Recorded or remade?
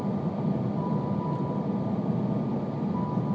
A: recorded